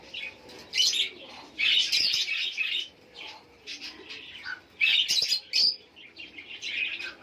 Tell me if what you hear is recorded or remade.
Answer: recorded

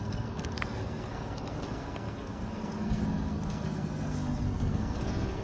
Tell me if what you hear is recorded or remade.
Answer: remade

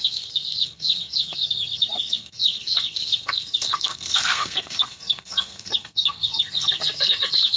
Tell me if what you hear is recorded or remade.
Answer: remade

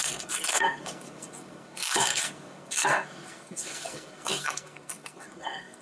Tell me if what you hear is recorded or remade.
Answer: remade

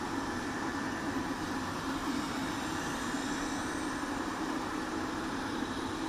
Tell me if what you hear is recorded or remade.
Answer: remade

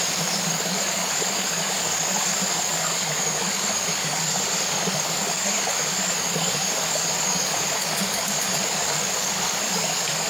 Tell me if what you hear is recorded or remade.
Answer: remade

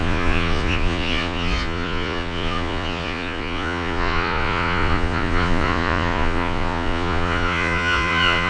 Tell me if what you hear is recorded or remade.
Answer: remade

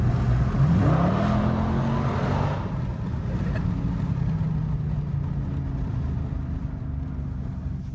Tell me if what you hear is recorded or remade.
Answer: recorded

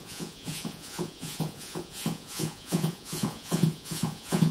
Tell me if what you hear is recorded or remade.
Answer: remade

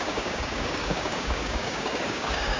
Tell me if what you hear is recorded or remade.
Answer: remade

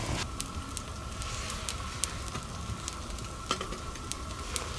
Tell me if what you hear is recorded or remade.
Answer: recorded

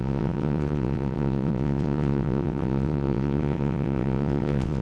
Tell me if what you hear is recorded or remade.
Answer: remade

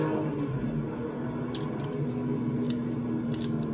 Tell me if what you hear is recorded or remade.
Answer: recorded